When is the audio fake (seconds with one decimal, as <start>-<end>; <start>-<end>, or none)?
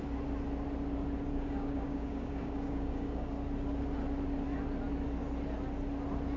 1.3-3.3